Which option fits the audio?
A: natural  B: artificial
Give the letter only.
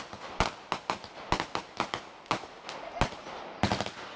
A